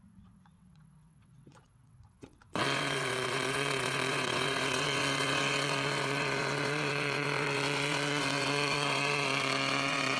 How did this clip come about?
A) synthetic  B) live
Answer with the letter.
A